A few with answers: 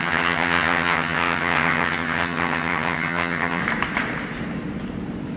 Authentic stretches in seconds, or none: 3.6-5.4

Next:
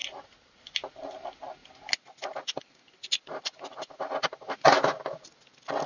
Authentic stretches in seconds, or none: 0.0-5.9

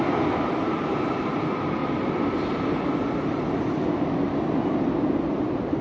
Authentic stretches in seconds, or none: 0.0-5.8

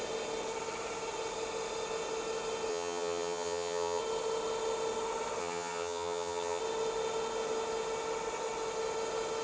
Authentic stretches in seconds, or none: 0.0-2.7; 4.0-5.4; 6.6-9.4

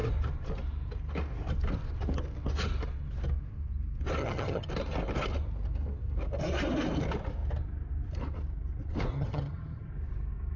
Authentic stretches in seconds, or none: 0.0-4.2; 4.7-9.1; 9.9-10.6